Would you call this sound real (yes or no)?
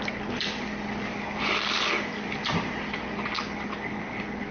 yes